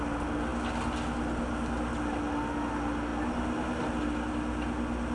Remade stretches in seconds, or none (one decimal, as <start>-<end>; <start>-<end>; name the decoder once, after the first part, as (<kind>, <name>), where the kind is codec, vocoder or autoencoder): none